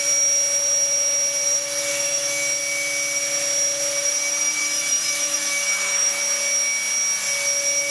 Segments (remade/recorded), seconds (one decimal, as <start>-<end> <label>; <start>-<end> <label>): 0.0-1.9 recorded; 1.9-2.6 remade; 2.6-4.6 recorded; 4.6-6.2 remade; 6.2-7.9 recorded